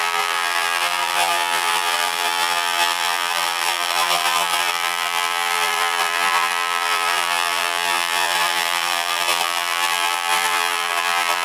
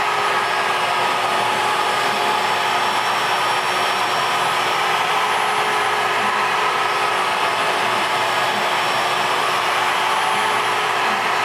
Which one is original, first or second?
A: second